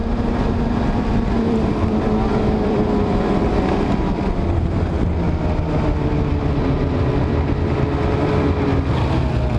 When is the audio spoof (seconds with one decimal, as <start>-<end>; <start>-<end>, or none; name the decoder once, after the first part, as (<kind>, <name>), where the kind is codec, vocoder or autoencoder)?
0.0-4.9 (vocoder, BigVGAN v2)